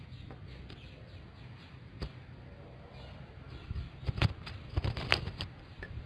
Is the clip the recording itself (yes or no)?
yes